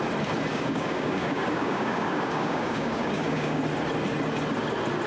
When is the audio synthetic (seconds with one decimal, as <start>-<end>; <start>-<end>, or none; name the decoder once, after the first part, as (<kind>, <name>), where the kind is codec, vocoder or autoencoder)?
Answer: 0.5-3.6 (codec, DAC)